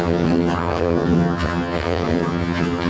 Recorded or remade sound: remade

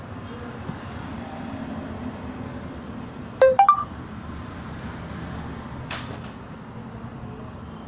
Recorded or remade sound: remade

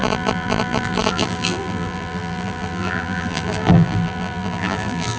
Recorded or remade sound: remade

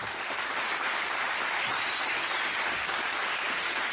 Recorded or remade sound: remade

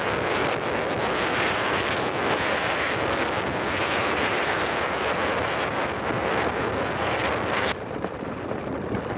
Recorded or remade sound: recorded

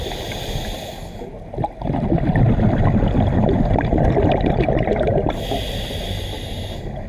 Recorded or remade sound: recorded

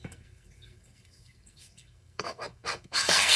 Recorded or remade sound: remade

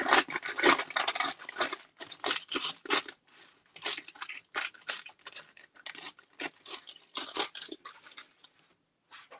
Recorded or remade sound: recorded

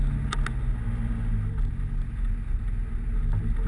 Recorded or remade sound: recorded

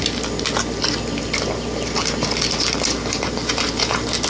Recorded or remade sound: recorded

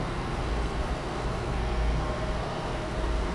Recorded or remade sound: remade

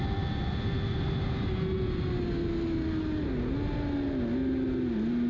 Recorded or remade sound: recorded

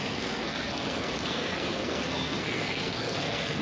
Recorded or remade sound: remade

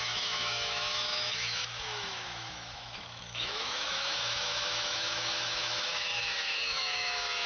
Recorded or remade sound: remade